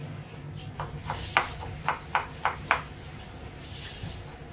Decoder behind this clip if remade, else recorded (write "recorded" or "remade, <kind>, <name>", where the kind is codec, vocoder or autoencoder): recorded